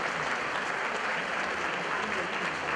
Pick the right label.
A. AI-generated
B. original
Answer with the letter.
B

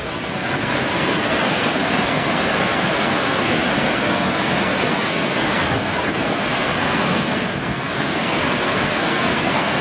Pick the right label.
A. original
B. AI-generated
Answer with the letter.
B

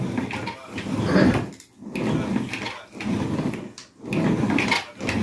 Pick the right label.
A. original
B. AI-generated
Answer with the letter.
A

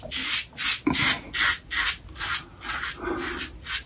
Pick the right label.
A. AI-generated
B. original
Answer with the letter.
B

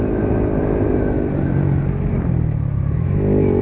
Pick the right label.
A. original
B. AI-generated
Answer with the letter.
A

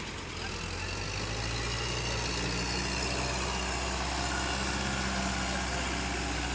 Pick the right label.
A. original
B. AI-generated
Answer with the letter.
A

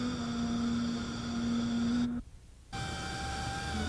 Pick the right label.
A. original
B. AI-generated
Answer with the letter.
A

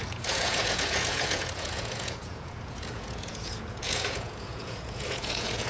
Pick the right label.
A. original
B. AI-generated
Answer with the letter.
B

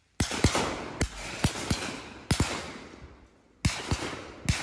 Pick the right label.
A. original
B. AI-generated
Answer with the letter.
A